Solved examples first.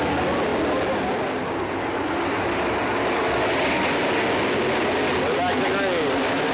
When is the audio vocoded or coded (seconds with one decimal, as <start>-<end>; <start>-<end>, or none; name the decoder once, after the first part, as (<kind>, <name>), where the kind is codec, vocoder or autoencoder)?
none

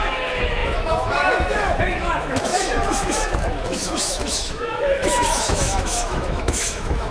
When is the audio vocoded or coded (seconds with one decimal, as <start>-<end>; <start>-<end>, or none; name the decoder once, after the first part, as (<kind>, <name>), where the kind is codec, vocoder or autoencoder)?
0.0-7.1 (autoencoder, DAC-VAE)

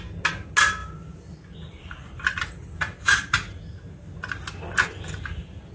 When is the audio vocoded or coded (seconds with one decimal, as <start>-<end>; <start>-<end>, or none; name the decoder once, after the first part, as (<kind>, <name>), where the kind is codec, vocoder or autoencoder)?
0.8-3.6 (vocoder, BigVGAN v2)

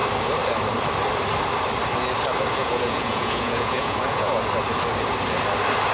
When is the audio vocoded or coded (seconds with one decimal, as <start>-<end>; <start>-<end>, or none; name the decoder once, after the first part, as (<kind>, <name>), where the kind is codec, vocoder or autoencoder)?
2.6-4.4 (vocoder, Vocos)

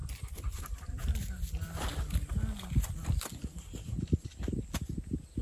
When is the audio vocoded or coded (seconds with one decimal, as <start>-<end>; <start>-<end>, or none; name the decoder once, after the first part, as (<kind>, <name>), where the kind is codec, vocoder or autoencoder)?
0.0-1.9 (vocoder, BigVGAN v2); 3.3-5.4

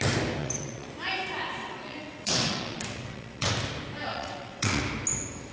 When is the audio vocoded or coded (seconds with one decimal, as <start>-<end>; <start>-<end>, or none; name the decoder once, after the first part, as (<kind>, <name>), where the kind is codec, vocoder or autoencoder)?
0.4-0.9 (vocoder, WaveNeXt); 1.6-3.5; 4.1-4.8

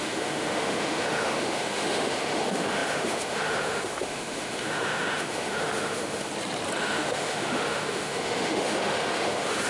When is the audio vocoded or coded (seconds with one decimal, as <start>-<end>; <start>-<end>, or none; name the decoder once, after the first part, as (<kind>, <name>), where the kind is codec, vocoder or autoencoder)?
0.0-6.3 (autoencoder, DAC-VAE); 6.8-9.7